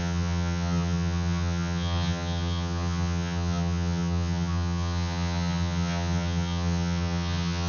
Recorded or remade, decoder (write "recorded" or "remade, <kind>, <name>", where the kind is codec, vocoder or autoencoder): remade, vocoder, HiFi-GAN